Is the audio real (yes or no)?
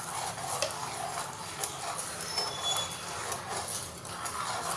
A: yes